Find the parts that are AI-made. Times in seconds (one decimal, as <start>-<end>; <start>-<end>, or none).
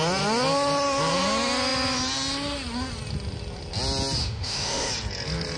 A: 4.2-4.9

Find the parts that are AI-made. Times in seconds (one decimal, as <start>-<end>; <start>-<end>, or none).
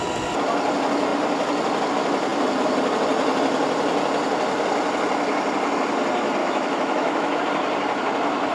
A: 6.4-7.4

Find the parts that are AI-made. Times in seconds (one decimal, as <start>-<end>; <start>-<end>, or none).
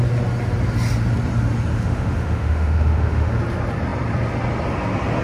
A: 1.7-3.4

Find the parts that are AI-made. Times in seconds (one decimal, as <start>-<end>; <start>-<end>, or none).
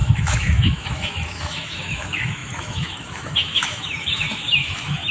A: 0.0-5.1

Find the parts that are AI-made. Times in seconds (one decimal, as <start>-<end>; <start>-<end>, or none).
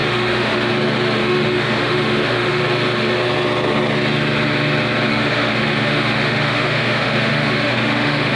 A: 0.0-0.7; 1.2-2.6; 5.1-8.4